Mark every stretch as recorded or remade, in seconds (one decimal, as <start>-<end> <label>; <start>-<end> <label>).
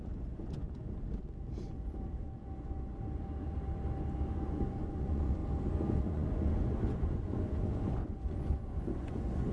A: 0.0-0.8 remade; 0.8-4.3 recorded; 4.3-5.4 remade; 5.4-5.9 recorded; 5.9-9.5 remade